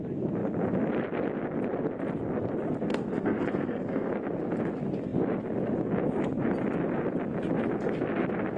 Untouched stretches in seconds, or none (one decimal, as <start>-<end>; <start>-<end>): 0.0-2.9; 4.1-8.6